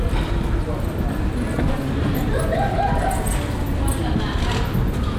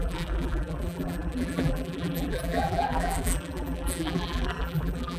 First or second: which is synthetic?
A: second